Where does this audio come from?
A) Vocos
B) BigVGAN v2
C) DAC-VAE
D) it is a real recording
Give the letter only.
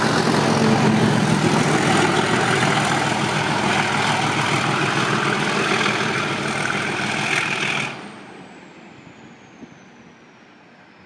D